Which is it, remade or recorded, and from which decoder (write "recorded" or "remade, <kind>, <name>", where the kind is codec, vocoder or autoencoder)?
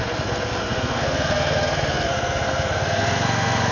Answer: remade, codec, SNAC